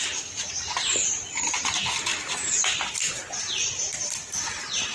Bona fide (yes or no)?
yes